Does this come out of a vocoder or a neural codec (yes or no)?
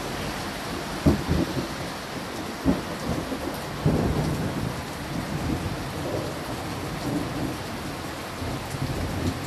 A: no